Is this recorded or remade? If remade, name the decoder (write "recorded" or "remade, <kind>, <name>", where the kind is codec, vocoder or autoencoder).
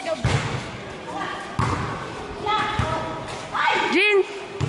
recorded